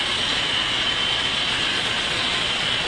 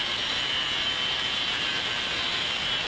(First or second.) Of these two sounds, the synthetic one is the first